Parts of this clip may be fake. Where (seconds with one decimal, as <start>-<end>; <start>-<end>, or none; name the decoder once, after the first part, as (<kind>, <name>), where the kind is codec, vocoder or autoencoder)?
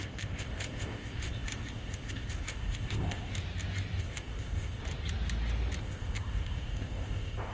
0.0-3.3 (codec, ZipCodec); 4.0-4.8; 5.8-7.5